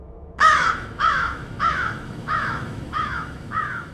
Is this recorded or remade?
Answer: remade